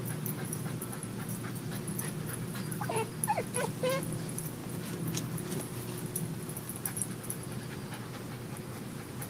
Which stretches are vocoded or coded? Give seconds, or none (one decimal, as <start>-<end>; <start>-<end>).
none